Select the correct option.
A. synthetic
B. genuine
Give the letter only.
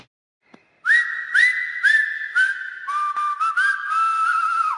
B